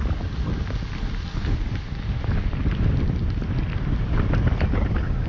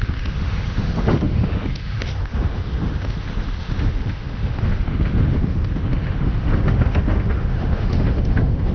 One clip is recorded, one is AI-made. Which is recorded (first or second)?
first